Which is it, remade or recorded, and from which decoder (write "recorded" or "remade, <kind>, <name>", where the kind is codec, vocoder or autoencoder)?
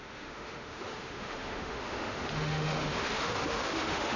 remade, autoencoder, DAC-VAE